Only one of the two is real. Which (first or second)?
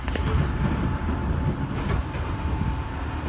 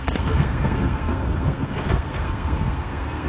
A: first